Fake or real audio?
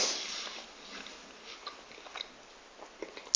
real